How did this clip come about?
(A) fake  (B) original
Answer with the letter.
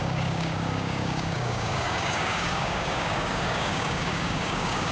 A